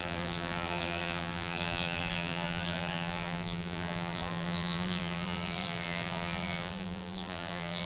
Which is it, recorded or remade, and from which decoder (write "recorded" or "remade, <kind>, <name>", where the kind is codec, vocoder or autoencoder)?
remade, vocoder, BigVGAN v2